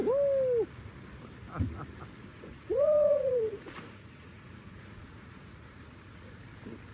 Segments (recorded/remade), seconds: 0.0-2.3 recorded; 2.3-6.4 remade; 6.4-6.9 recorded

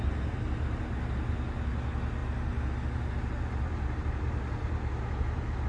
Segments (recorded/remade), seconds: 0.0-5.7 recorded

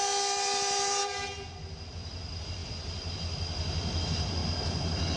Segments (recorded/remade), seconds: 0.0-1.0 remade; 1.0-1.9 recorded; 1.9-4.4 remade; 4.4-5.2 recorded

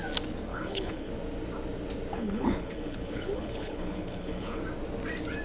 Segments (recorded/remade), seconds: 0.0-0.5 recorded; 0.5-1.1 remade; 1.1-2.1 recorded; 2.1-4.6 remade; 4.6-5.4 recorded

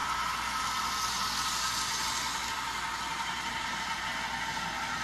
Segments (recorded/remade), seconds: 0.0-3.1 recorded; 3.1-4.0 remade; 4.0-5.0 recorded